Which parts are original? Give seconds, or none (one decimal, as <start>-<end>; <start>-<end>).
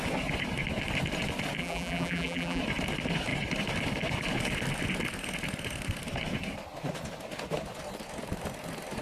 0.0-1.6; 2.6-9.0